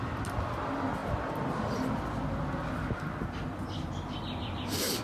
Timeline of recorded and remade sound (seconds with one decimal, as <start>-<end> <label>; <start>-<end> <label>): 0.0-5.0 recorded